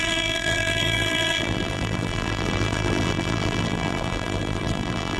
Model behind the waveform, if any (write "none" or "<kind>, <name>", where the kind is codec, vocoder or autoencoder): vocoder, BigVGAN v2